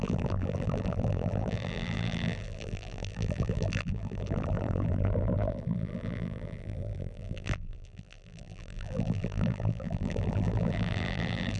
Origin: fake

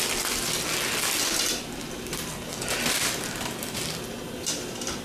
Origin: real